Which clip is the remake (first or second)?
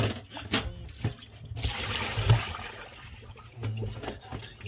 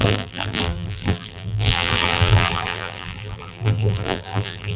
second